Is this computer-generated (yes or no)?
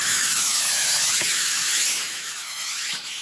yes